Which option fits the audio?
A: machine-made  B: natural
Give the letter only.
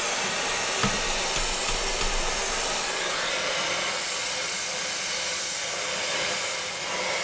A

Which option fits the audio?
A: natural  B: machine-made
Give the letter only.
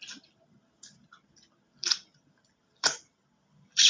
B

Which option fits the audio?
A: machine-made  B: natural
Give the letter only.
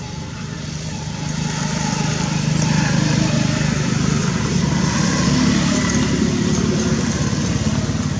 B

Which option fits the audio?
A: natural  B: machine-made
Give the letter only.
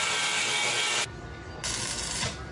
A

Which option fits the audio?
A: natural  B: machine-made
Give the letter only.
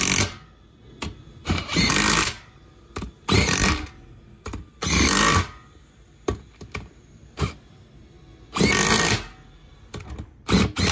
A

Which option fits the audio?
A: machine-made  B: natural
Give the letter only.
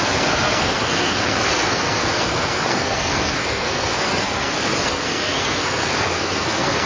A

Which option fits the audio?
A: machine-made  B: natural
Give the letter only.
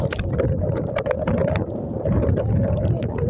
A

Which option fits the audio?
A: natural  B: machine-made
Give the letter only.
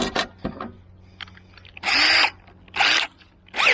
A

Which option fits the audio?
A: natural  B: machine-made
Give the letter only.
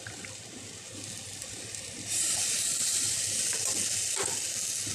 A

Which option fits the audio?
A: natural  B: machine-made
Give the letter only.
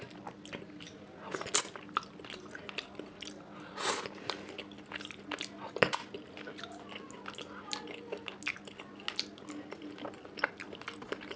A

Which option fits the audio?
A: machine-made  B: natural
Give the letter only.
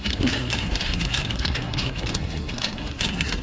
A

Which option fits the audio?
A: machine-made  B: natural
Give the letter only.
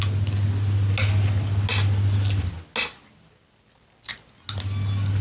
B